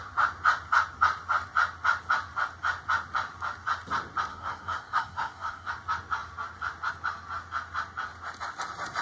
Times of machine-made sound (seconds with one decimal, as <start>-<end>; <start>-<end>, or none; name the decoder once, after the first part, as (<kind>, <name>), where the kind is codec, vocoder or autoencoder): 4.3-5.7 (codec, SNAC)